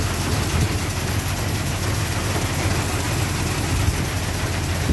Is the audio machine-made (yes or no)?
no